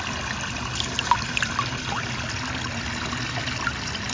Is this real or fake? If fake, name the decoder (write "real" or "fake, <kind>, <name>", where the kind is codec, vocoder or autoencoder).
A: real